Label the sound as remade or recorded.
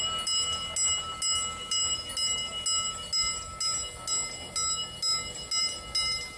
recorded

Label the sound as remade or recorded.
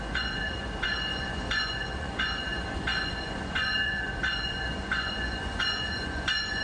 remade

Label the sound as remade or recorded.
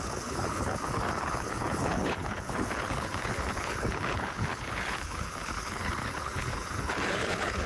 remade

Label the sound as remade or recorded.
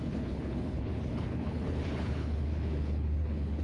remade